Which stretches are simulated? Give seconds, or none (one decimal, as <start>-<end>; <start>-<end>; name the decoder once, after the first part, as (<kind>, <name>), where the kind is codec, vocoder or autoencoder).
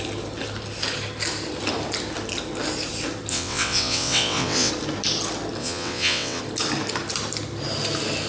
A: 3.3-4.7 (vocoder, WaveNeXt); 5.6-6.4